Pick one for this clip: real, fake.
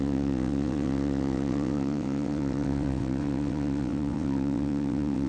fake